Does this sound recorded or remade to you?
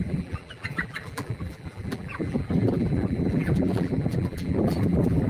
remade